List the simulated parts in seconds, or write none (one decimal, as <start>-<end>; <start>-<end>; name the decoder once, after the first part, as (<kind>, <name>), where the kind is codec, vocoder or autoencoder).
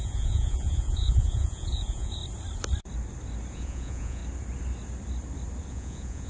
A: 0.0-2.2 (vocoder, Vocos); 3.5-4.2; 5.7-6.3